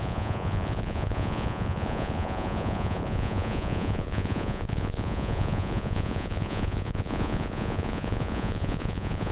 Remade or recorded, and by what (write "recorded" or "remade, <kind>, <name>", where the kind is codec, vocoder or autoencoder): remade, vocoder, Vocos